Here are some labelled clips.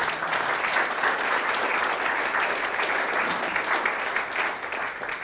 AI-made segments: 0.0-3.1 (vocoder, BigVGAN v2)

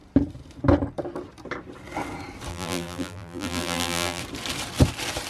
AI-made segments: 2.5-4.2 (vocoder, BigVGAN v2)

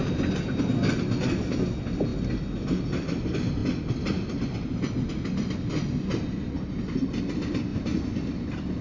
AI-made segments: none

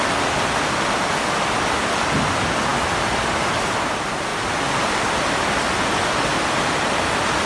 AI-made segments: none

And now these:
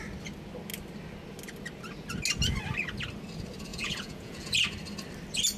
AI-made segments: 3.7-4.5 (vocoder, Vocos)